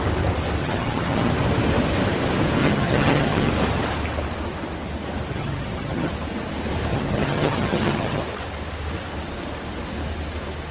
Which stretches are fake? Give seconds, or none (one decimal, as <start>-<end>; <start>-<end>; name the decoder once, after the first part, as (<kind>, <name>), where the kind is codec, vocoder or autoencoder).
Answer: 0.6-1.3 (vocoder, HiFi-GAN); 2.6-3.5; 5.3-6.1; 6.9-8.2